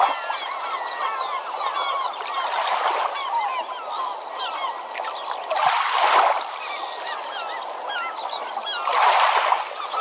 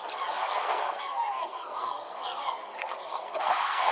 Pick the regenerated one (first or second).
second